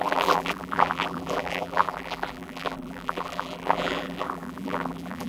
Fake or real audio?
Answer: fake